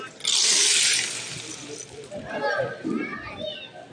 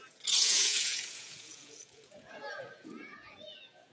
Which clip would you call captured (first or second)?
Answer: first